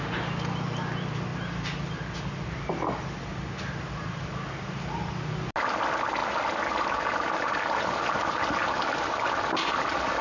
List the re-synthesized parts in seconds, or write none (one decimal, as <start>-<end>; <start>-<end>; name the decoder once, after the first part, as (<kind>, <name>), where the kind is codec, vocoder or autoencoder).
none